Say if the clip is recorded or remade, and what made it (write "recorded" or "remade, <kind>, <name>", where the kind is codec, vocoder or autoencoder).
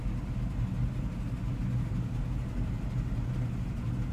recorded